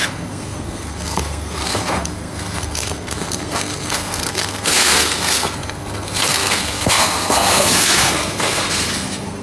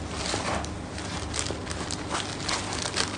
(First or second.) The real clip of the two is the second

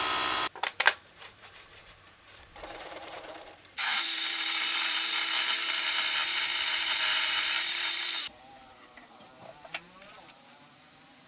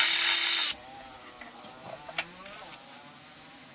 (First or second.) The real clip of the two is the second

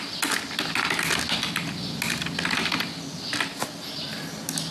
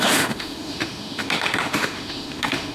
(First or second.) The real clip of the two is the first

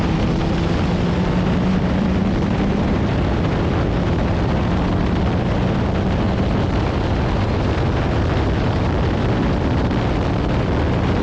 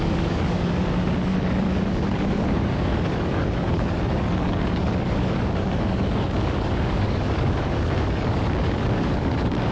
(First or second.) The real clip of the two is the first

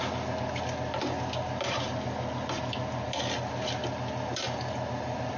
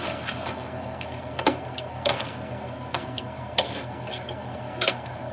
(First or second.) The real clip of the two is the first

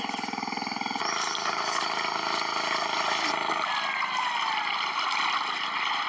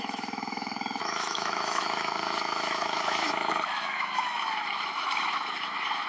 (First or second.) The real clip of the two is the first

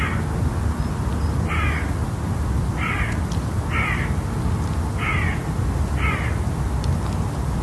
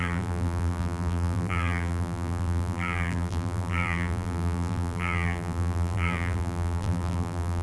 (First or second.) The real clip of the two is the first